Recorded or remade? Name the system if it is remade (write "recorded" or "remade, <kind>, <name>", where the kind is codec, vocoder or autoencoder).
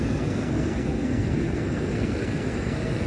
remade, codec, SNAC